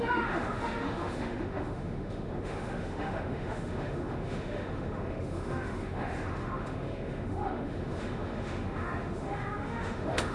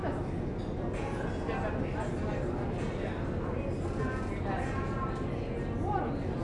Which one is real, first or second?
second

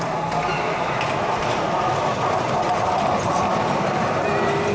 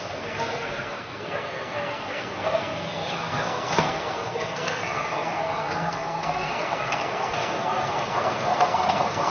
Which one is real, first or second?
first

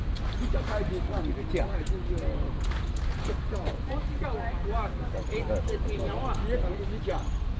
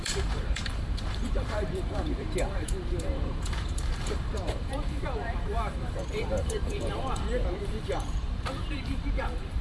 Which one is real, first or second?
first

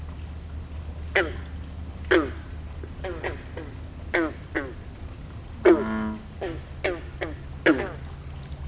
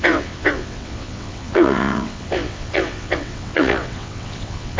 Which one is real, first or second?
first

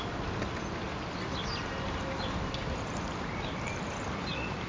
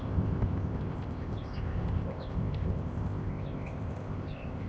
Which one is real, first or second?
first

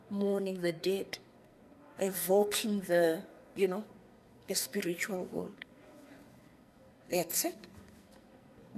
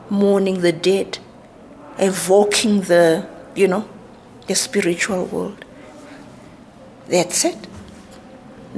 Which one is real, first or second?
second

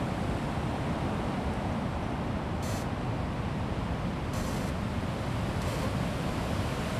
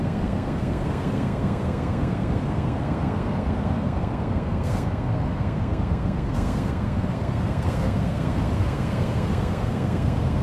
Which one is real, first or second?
first